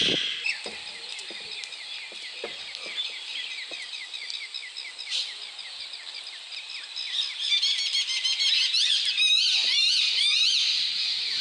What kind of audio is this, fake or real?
real